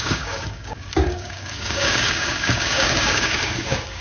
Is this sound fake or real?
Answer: fake